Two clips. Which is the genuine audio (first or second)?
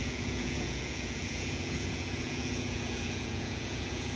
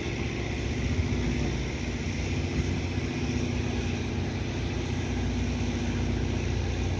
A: second